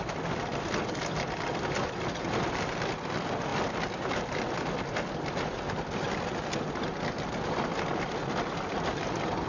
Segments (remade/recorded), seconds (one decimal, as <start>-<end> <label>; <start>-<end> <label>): 0.0-3.5 recorded; 3.5-7.5 remade; 7.5-9.5 recorded